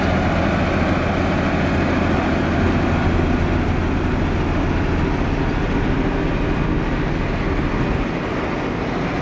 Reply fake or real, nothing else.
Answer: real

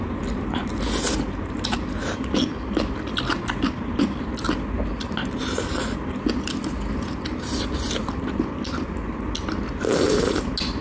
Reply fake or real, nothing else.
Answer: real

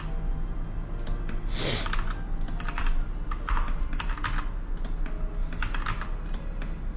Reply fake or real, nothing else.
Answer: real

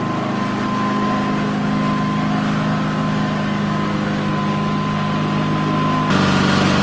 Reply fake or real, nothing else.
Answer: real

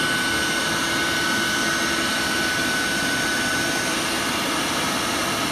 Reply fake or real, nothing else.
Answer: real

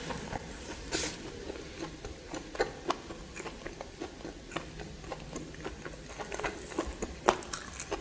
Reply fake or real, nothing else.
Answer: real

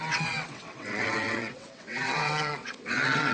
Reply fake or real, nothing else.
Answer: fake